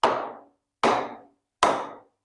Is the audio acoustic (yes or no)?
yes